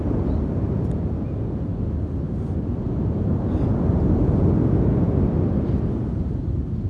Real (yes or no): yes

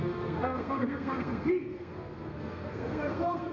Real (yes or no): no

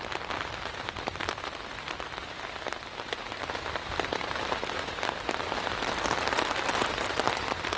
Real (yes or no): yes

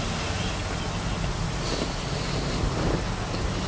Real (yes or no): yes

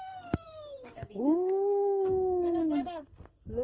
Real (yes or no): no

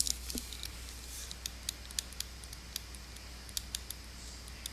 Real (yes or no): yes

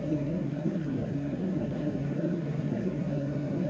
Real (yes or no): no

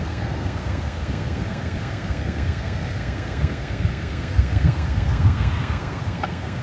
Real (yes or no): no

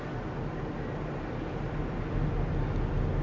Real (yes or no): yes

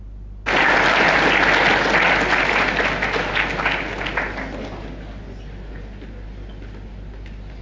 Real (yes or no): yes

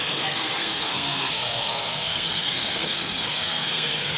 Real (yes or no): no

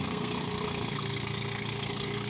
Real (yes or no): no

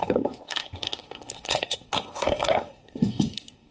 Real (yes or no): no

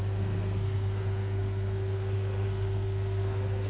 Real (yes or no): no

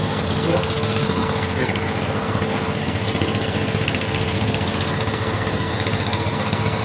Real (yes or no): no